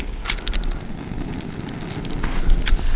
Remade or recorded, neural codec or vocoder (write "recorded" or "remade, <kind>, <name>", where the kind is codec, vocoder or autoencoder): recorded